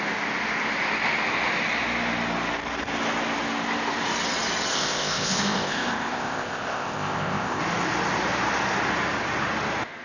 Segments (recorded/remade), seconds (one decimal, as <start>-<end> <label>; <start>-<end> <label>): 0.0-4.7 recorded; 4.7-7.6 remade; 7.6-10.0 recorded